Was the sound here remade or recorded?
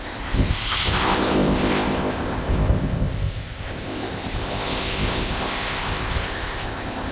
remade